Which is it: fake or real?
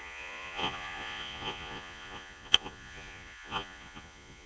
fake